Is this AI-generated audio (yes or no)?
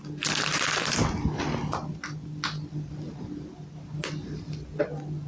no